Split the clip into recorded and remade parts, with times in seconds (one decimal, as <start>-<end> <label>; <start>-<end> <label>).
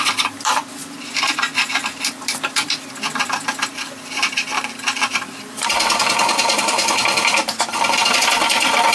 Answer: 0.0-8.9 remade